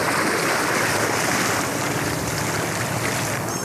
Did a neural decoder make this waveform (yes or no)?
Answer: no